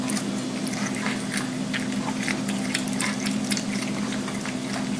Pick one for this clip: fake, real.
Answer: real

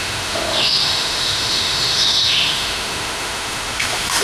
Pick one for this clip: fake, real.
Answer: fake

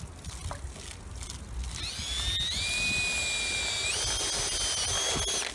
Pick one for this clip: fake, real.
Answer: real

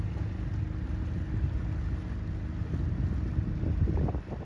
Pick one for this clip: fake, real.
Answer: real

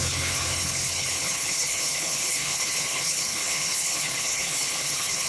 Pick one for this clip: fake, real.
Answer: fake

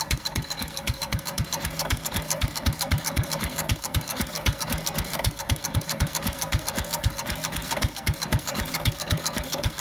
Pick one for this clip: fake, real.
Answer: fake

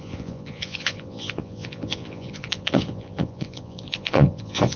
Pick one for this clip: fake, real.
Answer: fake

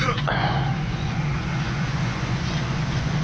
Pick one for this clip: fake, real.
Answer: fake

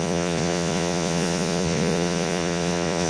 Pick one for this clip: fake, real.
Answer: fake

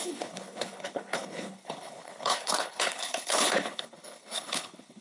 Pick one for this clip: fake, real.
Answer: fake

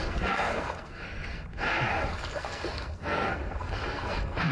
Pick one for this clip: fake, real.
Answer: fake